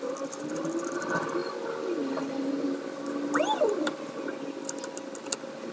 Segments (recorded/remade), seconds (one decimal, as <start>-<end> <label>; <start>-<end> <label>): 0.0-5.7 recorded

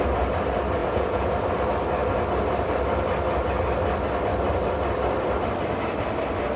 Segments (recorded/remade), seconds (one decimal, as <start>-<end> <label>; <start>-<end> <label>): 0.0-0.8 recorded; 0.8-1.3 remade; 1.3-6.6 recorded

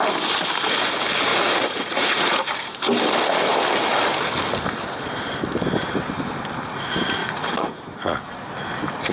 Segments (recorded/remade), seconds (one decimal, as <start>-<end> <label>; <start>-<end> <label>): 0.0-1.3 recorded; 1.3-2.4 remade; 2.4-7.2 recorded; 7.2-7.8 remade; 7.8-9.1 recorded